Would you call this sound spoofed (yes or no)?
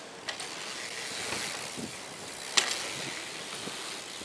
no